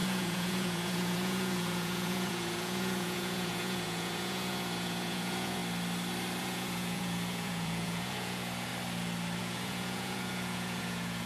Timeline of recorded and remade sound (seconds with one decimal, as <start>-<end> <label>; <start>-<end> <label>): 0.0-5.6 remade; 5.6-6.4 recorded; 6.4-8.7 remade; 8.7-9.4 recorded; 9.4-11.3 remade